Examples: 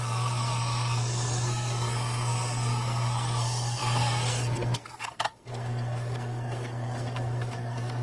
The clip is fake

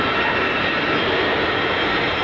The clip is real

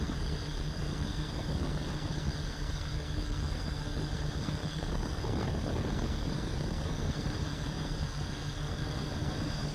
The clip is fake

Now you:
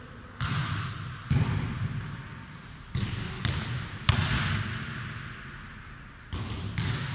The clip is real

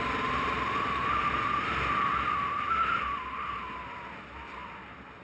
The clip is real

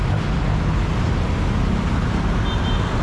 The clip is real